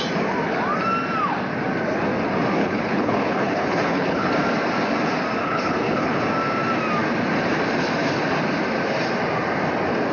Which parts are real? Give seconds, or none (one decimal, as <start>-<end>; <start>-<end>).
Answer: 0.0-2.6; 4.3-5.4; 6.2-10.1